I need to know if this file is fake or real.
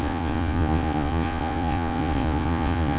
fake